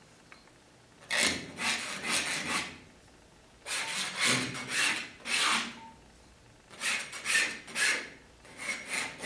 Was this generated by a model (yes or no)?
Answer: no